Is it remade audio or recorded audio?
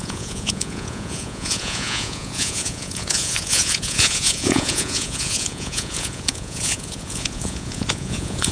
remade